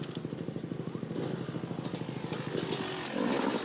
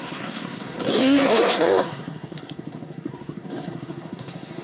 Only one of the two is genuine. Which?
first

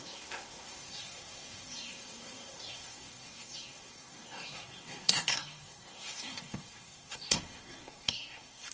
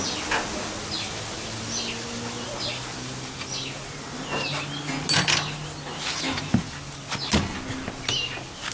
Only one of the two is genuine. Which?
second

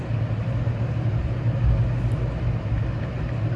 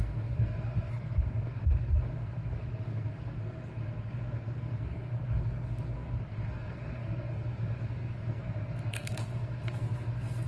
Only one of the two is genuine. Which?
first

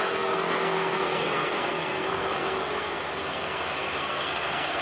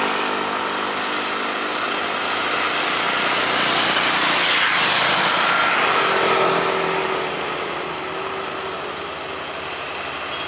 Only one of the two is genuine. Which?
second